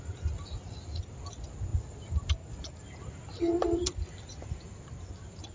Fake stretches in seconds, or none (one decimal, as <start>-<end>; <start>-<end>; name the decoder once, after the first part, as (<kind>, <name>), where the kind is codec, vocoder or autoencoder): none